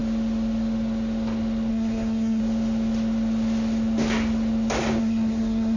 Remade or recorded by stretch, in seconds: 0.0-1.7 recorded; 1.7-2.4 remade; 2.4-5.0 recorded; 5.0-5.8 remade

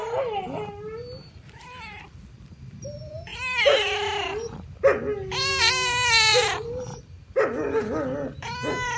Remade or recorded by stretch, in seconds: 0.0-9.0 recorded

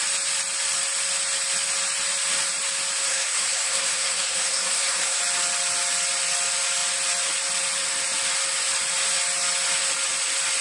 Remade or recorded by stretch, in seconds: 0.0-3.1 recorded; 3.1-5.2 remade; 5.2-10.6 recorded

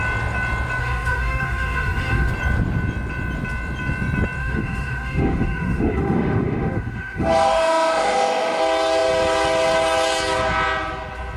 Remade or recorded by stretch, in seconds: 0.0-0.8 recorded; 0.8-2.3 remade; 2.3-4.4 recorded; 4.4-8.6 remade; 8.6-11.4 recorded

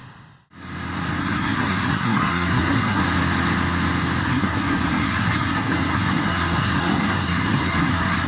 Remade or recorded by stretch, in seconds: 0.0-1.2 recorded; 1.2-3.0 remade; 3.0-4.2 recorded; 4.2-8.3 remade

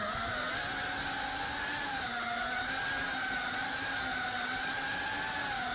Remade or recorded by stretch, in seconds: 0.0-5.7 recorded

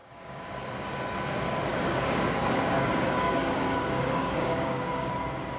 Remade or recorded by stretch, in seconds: 0.0-0.6 remade; 0.6-1.7 recorded; 1.7-5.1 remade; 5.1-5.6 recorded